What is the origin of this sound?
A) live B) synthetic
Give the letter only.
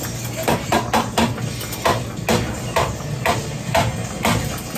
A